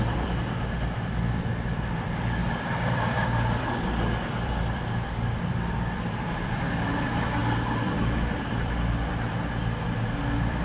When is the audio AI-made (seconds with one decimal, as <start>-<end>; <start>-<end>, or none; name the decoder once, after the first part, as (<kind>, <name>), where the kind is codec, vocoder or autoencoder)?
0.0-10.6 (vocoder, BigVGAN v2)